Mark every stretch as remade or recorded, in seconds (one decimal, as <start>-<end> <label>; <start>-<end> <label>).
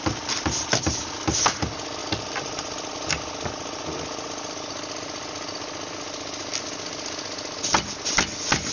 0.0-8.7 recorded